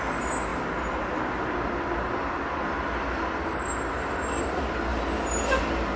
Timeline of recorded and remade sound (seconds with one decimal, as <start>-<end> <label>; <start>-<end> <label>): 0.0-6.0 recorded